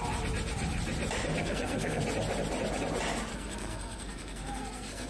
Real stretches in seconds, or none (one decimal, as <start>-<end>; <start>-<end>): 0.0-1.4; 2.0-3.3